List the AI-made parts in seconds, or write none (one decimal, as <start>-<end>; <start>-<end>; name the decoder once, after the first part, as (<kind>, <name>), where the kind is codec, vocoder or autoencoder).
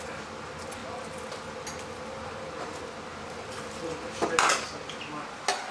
none